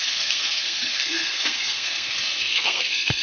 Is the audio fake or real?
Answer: fake